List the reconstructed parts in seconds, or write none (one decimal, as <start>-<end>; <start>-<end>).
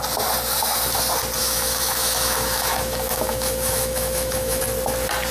1.4-4.6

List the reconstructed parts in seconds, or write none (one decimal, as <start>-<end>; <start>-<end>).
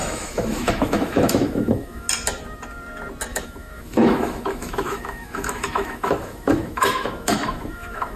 0.0-2.1; 3.3-8.2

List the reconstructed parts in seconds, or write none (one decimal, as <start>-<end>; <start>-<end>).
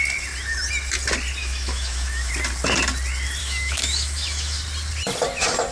1.4-2.3; 3.4-4.6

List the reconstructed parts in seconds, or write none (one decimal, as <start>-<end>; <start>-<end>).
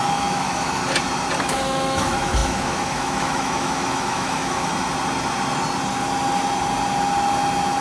0.0-0.8; 1.4-4.7